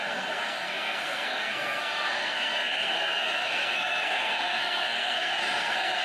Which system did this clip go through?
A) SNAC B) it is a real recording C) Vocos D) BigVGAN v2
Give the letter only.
A